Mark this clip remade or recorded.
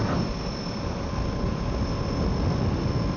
recorded